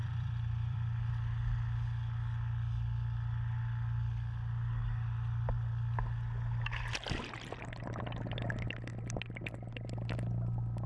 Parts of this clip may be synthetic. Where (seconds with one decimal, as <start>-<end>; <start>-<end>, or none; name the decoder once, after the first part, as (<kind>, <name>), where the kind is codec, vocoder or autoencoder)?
0.0-1.1 (vocoder, BigVGAN v2)